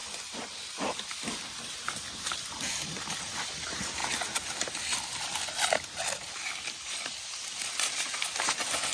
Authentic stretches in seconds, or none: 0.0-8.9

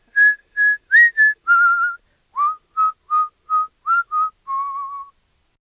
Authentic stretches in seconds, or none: 0.0-5.7

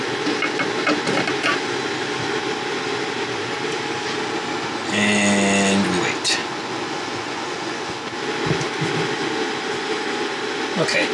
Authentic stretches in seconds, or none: 0.0-6.4; 8.0-11.1